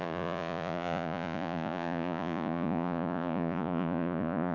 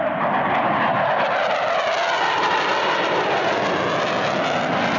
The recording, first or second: second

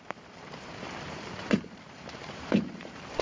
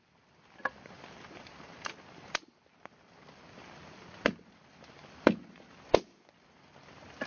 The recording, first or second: second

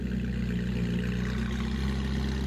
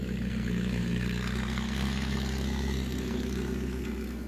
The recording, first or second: first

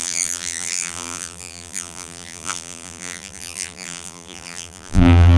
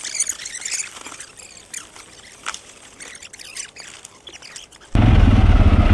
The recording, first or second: second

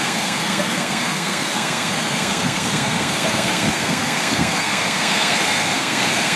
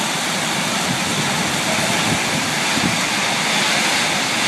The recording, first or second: second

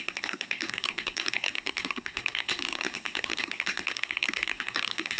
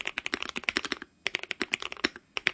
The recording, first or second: second